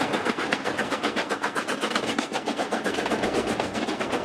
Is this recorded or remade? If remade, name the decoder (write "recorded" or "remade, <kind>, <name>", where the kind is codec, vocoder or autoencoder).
remade, codec, SNAC